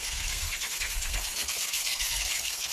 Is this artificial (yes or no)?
yes